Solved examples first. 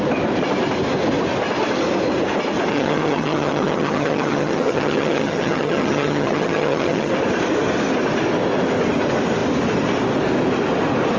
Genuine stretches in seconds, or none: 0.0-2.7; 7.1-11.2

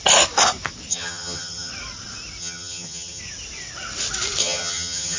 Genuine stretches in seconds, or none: 0.0-0.9; 1.7-2.4; 3.2-4.4

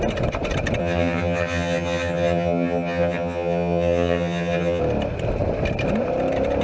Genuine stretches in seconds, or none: 0.0-0.8; 4.8-6.6

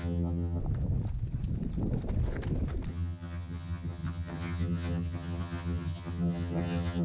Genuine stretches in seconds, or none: 0.6-2.9

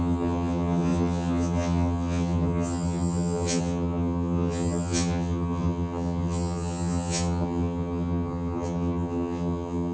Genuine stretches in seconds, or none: none

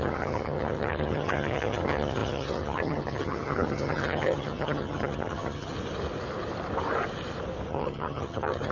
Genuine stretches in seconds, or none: 5.7-7.7

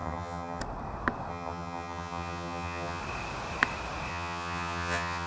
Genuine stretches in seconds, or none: 0.6-1.3; 3.0-4.1